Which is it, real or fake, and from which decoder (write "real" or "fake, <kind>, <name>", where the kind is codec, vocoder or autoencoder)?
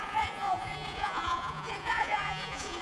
fake, vocoder, Vocos